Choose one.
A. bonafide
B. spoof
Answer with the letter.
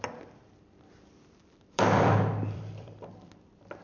B